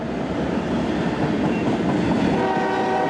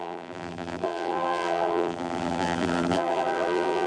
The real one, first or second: first